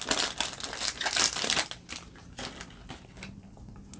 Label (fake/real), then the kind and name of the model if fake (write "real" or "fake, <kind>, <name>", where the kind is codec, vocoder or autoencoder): real